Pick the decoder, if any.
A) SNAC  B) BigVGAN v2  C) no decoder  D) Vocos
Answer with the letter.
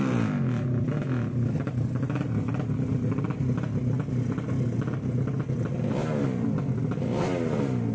C